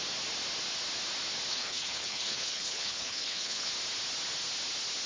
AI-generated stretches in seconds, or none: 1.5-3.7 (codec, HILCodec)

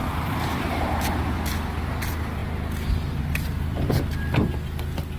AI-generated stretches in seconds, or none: 0.0-1.2 (vocoder, BigVGAN v2); 2.4-3.9

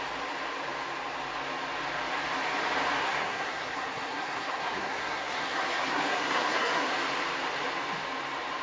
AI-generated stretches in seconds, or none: 3.0-6.9 (codec, SNAC)

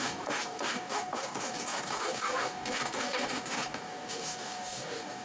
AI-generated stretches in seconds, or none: 0.0-5.2 (codec, DAC)

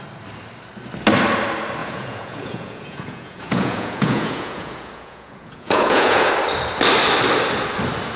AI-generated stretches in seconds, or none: 1.8-6.3 (vocoder, Vocos)

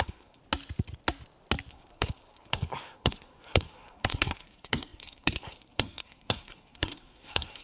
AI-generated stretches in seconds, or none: 0.0-0.4 (codec, SNAC); 1.7-7.6

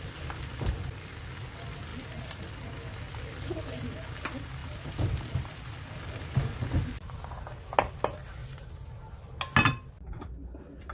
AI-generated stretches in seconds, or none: 8.4-9.1 (vocoder, BigVGAN v2)

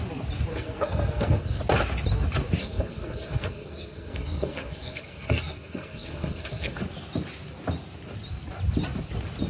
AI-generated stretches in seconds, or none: 0.5-1.6 (codec, SNAC); 2.6-6.8